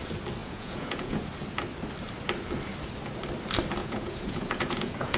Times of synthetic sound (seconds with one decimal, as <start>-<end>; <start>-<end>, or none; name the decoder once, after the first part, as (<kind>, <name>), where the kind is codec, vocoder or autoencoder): 0.4-1.3 (vocoder, Vocos); 3.8-5.2